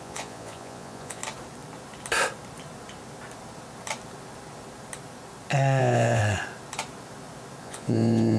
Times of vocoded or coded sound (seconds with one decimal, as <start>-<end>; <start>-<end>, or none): 0.0-1.2; 5.8-6.2; 7.6-8.4